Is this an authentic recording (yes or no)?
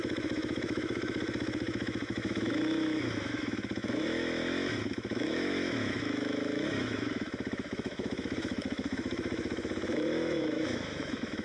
no